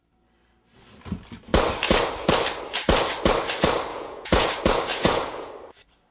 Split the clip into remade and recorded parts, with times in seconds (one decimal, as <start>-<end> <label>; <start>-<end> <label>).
0.0-3.9 recorded; 3.9-4.5 remade; 4.5-4.9 recorded; 4.9-5.5 remade; 5.5-6.1 recorded